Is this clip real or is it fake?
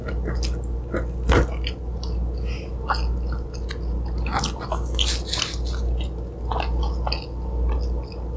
real